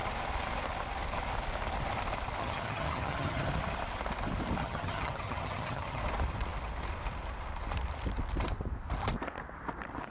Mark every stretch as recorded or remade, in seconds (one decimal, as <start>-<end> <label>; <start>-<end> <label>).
0.0-2.4 recorded; 2.4-3.5 remade; 3.5-4.6 recorded; 4.6-6.0 remade; 6.0-10.1 recorded